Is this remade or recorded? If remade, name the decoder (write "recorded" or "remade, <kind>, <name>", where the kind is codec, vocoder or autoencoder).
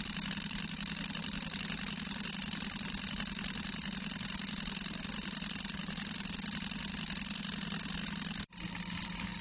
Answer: recorded